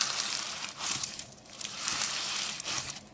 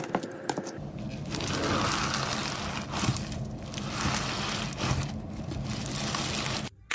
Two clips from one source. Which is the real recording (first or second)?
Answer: second